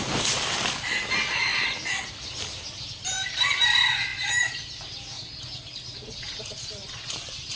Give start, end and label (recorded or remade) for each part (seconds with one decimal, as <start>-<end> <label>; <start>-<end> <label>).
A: 0.0-7.6 recorded